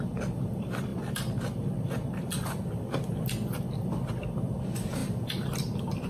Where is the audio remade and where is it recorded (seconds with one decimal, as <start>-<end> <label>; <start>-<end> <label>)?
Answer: 0.0-0.9 recorded; 0.9-4.6 remade; 4.6-5.0 recorded; 5.0-6.1 remade